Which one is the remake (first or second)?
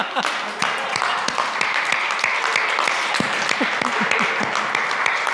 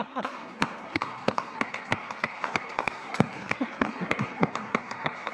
second